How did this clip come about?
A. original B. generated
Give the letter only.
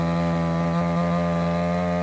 A